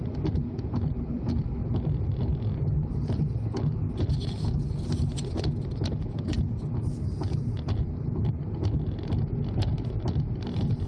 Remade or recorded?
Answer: recorded